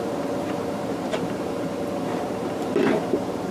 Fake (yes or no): yes